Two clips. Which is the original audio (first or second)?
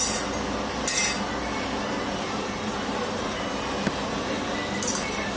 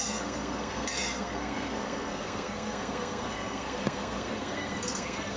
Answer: first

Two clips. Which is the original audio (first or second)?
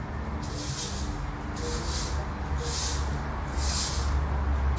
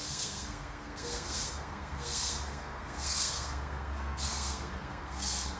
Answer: first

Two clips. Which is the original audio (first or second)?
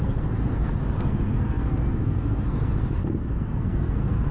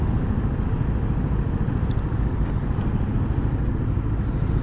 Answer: second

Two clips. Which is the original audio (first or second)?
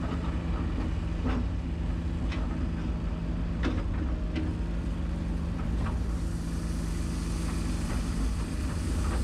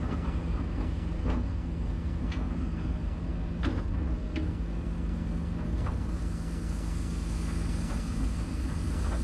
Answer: first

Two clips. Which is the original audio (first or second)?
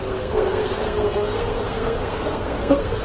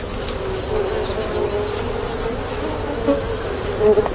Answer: second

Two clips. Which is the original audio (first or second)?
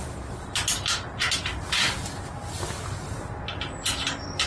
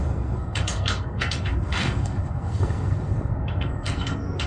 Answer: first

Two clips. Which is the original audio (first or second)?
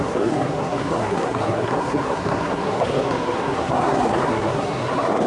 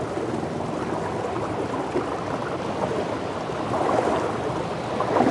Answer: second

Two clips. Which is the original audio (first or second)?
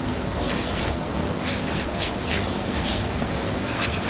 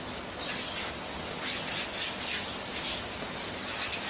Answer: second